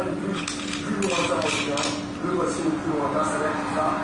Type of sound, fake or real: real